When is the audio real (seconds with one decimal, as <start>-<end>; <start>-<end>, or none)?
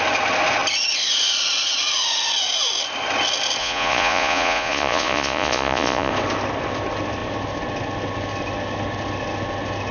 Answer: 0.0-3.6; 6.1-9.9